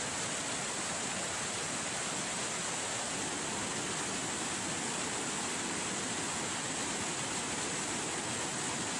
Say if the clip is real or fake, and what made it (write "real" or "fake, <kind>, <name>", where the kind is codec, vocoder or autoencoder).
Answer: real